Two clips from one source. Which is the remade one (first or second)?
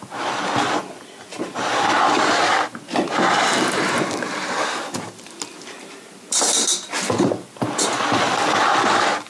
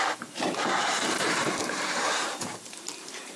second